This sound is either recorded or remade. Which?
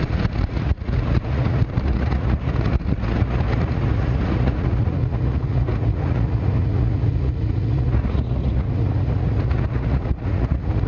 remade